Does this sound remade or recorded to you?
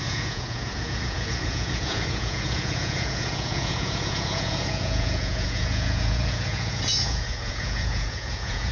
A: remade